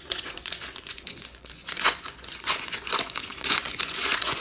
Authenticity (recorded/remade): remade